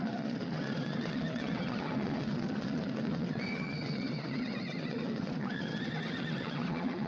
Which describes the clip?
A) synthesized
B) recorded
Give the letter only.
A